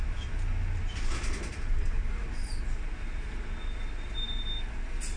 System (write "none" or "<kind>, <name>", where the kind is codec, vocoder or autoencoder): none